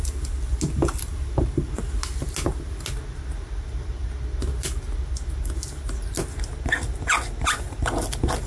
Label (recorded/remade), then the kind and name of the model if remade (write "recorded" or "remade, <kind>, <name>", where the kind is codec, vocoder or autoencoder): recorded